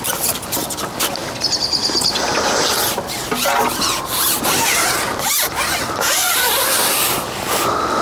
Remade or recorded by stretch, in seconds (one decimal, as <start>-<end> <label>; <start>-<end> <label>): 0.0-8.0 recorded